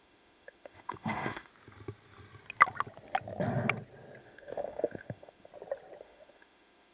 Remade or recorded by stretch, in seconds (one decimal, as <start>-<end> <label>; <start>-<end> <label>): 0.0-1.5 remade; 1.5-4.2 recorded; 4.2-5.5 remade; 5.5-6.0 recorded; 6.0-6.9 remade